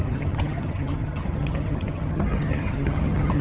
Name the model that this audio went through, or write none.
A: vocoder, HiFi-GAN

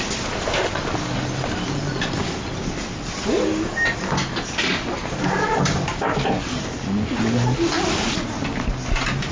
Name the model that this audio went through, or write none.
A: none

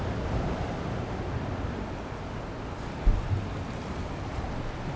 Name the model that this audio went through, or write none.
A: none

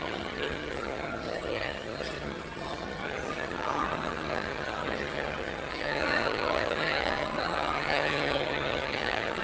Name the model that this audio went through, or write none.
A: vocoder, HiFi-GAN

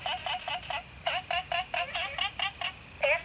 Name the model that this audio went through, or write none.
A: none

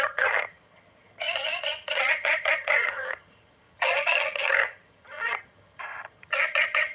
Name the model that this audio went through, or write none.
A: vocoder, HiFi-GAN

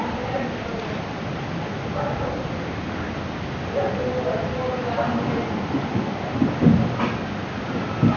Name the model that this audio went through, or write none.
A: none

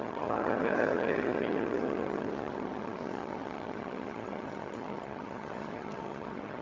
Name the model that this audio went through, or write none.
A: vocoder, HiFi-GAN